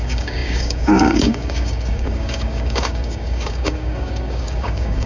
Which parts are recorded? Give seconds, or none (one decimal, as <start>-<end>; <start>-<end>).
none